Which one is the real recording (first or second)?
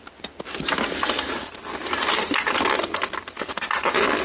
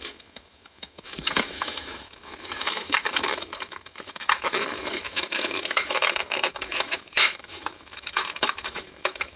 first